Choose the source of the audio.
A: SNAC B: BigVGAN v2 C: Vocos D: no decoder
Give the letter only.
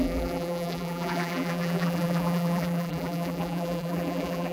B